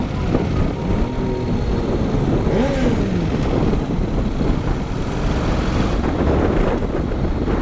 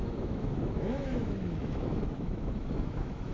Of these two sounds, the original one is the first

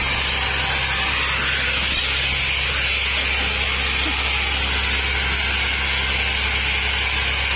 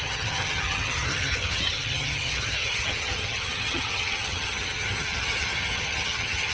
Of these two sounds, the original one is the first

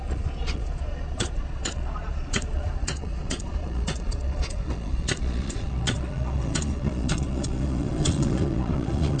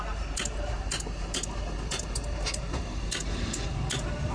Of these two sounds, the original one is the second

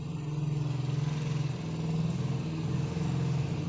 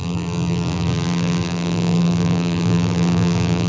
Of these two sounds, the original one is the first